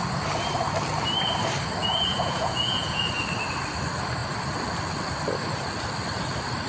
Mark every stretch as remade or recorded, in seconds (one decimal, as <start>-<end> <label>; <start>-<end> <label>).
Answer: 0.0-1.8 recorded; 1.8-3.1 remade; 3.1-6.7 recorded